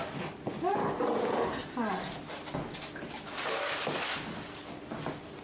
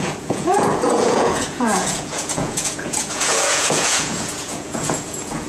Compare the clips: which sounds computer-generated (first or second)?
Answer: second